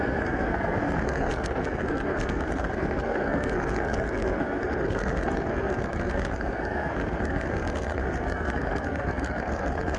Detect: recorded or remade remade